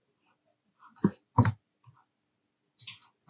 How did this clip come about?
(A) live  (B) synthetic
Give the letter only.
A